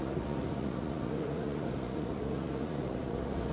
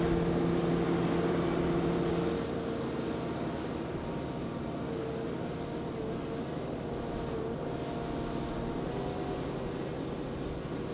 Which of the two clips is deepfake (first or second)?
first